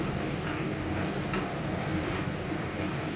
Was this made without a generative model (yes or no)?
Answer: no